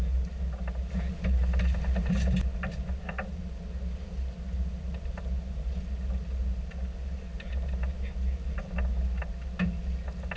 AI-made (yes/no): no